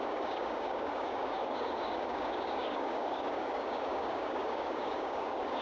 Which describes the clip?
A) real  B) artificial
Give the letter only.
B